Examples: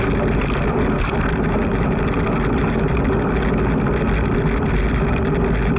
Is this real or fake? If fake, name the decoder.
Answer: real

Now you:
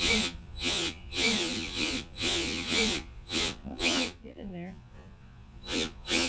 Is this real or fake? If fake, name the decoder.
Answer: fake, vocoder, Vocos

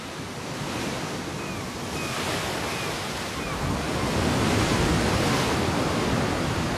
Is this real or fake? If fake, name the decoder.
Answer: real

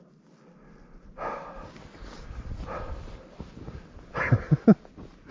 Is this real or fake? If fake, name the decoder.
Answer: real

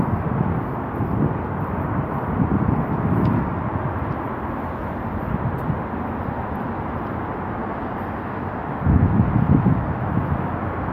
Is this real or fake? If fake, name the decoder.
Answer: real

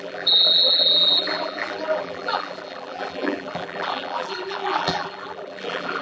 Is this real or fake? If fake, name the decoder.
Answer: fake, vocoder, BigVGAN v2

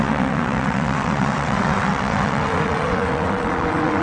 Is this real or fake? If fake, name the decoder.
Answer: fake, vocoder, WaveNeXt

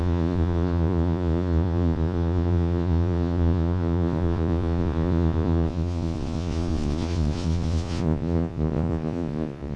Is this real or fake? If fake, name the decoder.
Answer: fake, vocoder, Vocos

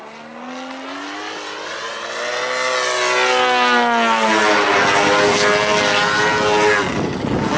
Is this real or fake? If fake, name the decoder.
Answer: real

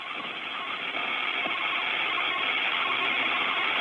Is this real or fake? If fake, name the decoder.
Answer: real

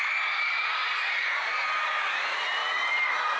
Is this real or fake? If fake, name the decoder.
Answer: real